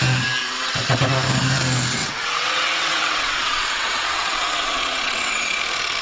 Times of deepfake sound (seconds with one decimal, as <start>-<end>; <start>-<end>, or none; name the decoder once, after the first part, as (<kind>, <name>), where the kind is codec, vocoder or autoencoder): 0.4-1.0 (vocoder, WaveNeXt); 2.0-5.6